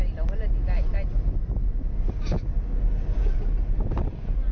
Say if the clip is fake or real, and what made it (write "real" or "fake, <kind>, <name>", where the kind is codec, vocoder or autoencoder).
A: real